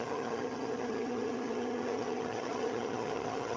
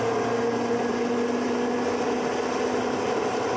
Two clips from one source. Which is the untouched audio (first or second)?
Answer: second